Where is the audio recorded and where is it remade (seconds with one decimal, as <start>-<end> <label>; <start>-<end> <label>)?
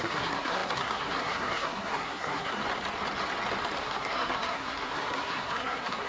0.0-2.6 remade; 2.6-3.8 recorded; 3.8-6.1 remade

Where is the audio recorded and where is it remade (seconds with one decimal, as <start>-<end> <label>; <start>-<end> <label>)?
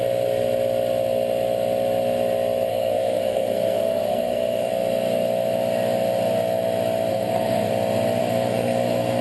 0.0-2.7 recorded; 2.7-4.7 remade; 4.7-7.1 recorded; 7.1-7.7 remade; 7.7-8.2 recorded; 8.2-9.2 remade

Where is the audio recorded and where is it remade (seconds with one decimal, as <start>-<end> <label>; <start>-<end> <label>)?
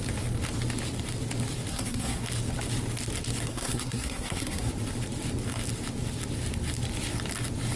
0.0-1.7 recorded; 1.7-2.2 remade; 2.2-3.5 recorded; 3.5-4.7 remade; 4.7-7.8 recorded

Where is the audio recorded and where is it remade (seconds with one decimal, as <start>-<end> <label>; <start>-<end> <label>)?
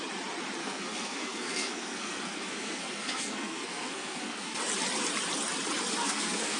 0.0-0.6 recorded; 0.6-4.6 remade; 4.6-6.0 recorded; 6.0-6.6 remade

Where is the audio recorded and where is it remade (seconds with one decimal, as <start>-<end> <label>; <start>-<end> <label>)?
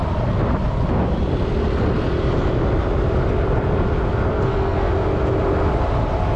0.0-4.3 recorded; 4.3-4.9 remade; 4.9-6.4 recorded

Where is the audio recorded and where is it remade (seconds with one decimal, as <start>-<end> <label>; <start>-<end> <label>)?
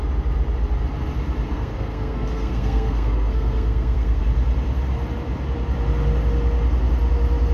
0.0-1.5 recorded; 1.5-4.2 remade; 4.2-7.5 recorded